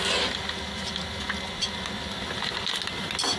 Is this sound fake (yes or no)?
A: no